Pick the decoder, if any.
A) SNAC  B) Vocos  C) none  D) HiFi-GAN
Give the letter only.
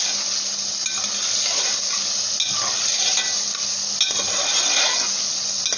C